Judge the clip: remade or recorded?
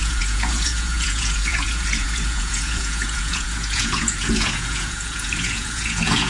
remade